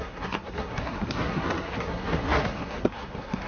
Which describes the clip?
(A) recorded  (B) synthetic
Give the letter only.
B